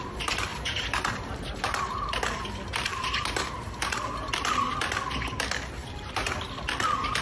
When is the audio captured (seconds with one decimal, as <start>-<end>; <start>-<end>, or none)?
0.0-0.5; 2.2-2.9; 3.5-5.8; 6.5-7.2